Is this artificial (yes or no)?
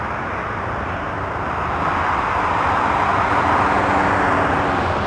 no